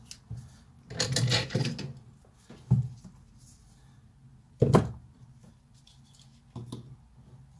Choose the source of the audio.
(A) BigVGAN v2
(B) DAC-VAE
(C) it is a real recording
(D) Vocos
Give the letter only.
C